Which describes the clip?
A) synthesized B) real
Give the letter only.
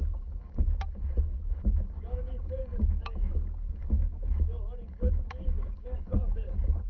A